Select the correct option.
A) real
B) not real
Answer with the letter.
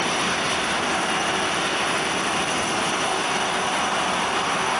A